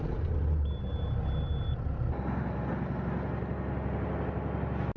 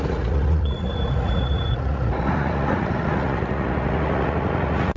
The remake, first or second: second